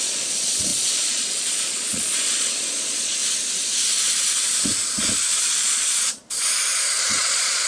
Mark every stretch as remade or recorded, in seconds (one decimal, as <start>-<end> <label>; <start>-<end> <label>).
0.0-3.2 remade; 3.2-5.4 recorded; 5.4-6.2 remade; 6.2-7.0 recorded; 7.0-7.7 remade